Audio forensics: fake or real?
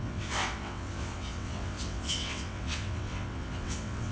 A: fake